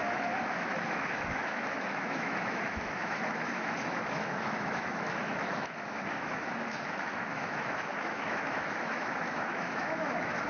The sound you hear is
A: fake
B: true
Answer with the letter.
A